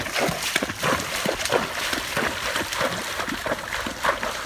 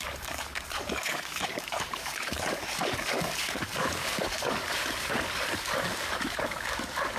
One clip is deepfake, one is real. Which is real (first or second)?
first